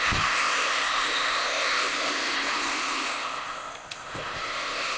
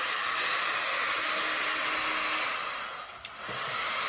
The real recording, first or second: second